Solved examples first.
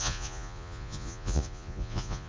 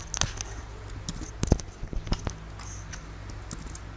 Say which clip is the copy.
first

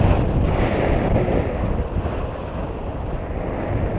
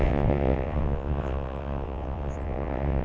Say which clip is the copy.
second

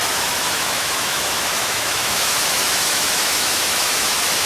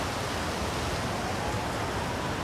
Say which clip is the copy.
first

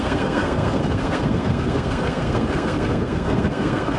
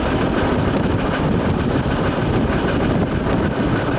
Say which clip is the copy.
first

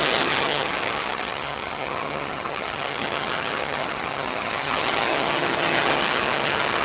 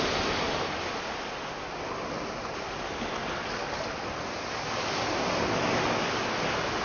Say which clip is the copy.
first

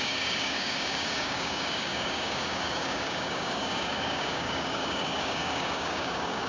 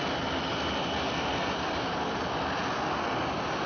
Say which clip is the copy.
first